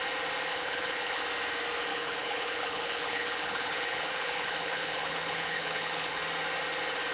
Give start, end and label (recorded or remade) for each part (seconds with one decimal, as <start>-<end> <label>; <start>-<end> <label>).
0.0-0.5 recorded; 0.5-1.2 remade; 1.2-1.9 recorded; 1.9-6.2 remade; 6.2-7.1 recorded